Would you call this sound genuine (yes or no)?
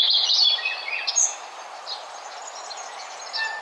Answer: yes